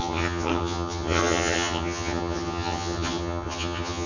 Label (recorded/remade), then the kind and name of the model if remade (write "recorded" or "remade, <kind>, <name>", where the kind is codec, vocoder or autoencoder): remade, vocoder, HiFi-GAN